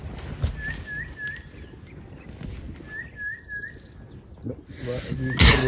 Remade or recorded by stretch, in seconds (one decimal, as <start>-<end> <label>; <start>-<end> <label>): 0.0-5.7 recorded